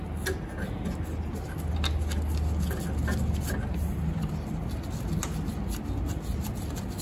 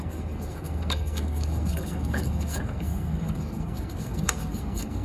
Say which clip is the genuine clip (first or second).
first